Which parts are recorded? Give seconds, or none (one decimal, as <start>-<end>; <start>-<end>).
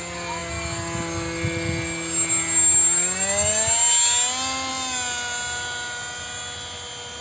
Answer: 0.0-7.2